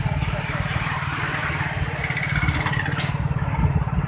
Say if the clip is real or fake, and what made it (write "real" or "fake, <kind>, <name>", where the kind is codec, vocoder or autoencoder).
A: real